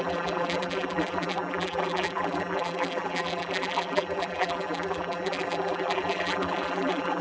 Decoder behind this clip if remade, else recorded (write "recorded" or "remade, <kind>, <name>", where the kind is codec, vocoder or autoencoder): remade, vocoder, BigVGAN v2